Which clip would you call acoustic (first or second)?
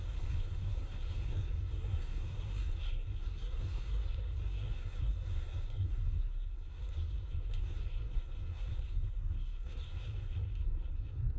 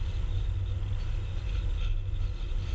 second